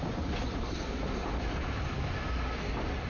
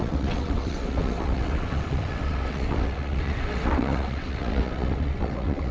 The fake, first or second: second